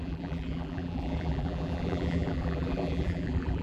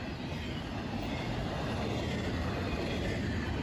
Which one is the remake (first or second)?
first